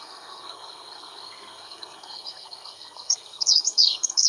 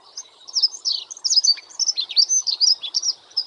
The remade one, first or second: first